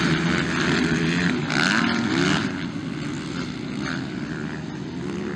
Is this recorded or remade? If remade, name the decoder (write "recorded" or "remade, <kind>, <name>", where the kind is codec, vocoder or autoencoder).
recorded